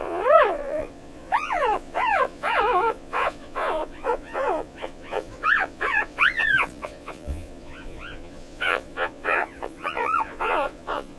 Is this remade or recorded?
remade